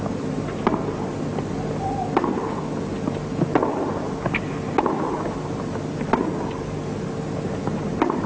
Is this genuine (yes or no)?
yes